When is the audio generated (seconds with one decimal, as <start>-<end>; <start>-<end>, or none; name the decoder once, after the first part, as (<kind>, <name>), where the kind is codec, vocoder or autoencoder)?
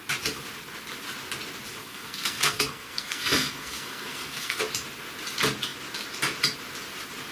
1.8-4.6 (codec, SNAC)